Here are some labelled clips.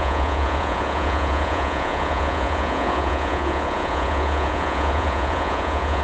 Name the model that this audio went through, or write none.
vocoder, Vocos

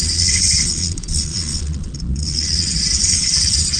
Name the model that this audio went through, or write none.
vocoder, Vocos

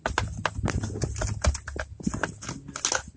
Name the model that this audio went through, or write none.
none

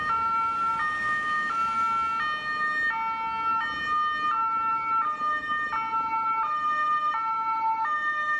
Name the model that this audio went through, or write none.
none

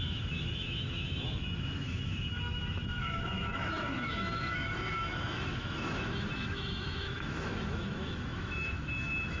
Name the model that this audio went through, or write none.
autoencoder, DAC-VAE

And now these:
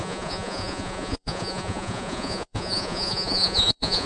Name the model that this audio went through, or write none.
vocoder, Vocos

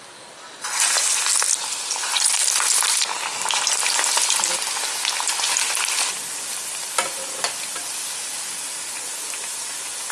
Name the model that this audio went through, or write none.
none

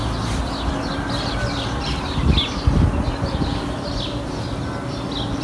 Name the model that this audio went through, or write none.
none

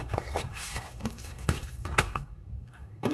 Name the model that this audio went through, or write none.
codec, SNAC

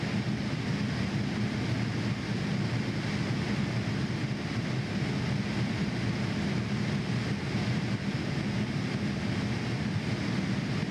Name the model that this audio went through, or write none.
none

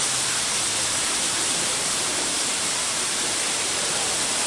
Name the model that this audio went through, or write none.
vocoder, BigVGAN v2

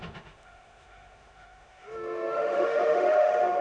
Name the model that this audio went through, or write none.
autoencoder, DAC-VAE